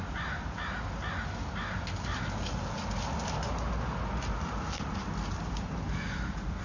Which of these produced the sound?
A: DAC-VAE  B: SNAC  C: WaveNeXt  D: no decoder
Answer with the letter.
D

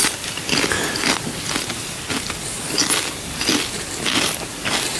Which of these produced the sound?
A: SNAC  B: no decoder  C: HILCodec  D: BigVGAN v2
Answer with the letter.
B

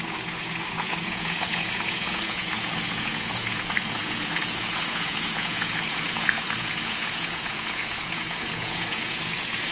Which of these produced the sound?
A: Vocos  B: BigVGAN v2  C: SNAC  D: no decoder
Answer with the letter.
A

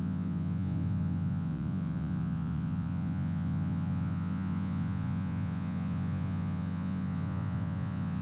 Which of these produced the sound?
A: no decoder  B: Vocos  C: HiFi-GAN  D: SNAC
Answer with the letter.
B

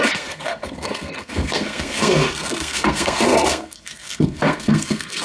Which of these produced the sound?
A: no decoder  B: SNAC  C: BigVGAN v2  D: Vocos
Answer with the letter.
B